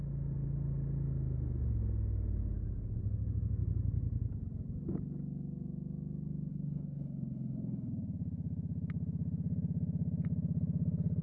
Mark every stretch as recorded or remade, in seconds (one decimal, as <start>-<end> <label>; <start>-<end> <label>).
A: 0.0-6.5 recorded; 6.5-7.9 remade; 7.9-11.2 recorded